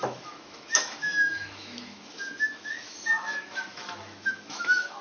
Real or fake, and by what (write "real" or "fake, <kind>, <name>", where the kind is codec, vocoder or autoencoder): fake, autoencoder, DAC-VAE